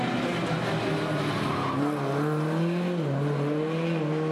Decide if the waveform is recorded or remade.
recorded